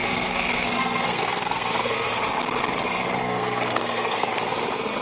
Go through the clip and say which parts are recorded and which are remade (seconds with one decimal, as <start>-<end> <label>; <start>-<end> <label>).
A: 0.0-2.1 remade; 2.1-3.2 recorded; 3.2-4.3 remade; 4.3-5.0 recorded